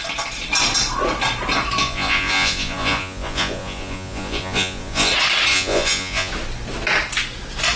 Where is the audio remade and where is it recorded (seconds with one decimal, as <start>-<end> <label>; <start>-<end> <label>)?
0.0-1.8 recorded; 1.8-5.1 remade; 5.1-5.5 recorded; 5.5-6.3 remade; 6.3-7.8 recorded